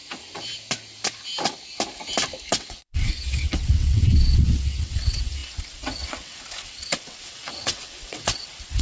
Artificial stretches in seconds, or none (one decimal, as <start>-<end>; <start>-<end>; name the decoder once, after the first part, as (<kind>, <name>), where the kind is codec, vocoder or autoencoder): 2.5-8.8 (vocoder, WaveNeXt)